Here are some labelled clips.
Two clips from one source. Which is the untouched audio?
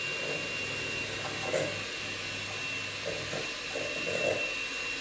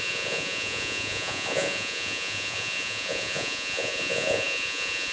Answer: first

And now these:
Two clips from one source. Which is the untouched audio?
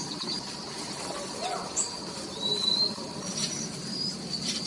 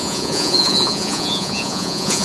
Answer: first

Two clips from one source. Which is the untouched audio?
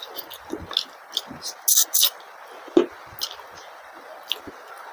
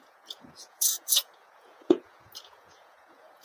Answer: first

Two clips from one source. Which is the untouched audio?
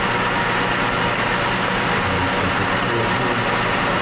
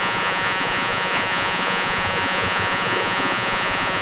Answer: first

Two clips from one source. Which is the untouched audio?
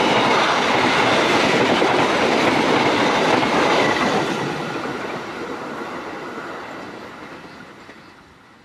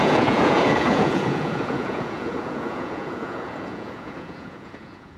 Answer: first